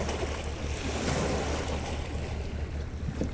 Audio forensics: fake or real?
real